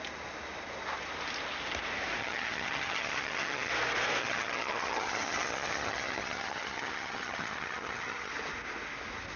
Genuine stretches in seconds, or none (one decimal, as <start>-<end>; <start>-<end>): 0.0-2.2; 3.7-4.2; 8.3-9.4